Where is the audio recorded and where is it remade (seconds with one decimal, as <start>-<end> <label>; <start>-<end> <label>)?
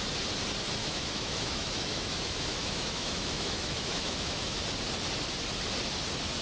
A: 0.0-0.8 recorded; 0.8-4.6 remade; 4.6-6.4 recorded